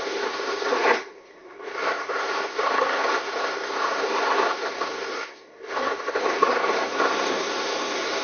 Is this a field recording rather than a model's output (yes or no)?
no